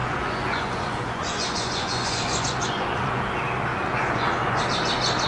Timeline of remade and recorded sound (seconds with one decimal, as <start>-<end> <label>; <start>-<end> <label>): 0.0-3.2 remade; 3.2-3.7 recorded; 3.7-4.6 remade; 4.6-5.3 recorded